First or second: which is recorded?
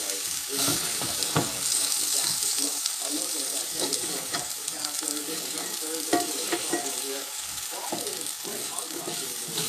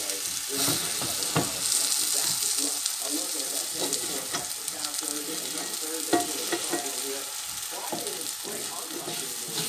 second